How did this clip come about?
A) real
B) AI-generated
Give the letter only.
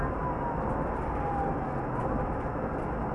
A